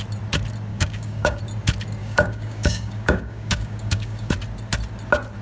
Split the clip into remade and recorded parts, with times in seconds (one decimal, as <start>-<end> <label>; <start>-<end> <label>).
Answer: 0.0-0.7 recorded; 0.7-1.4 remade; 1.4-2.0 recorded; 2.0-4.3 remade; 4.3-5.4 recorded